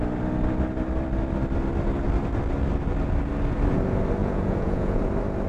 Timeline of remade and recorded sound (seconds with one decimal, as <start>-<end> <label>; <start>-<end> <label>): 0.0-4.2 recorded; 4.2-5.1 remade; 5.1-5.5 recorded